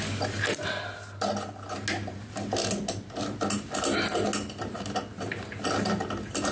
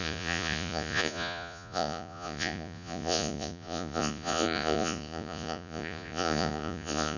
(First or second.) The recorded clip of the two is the first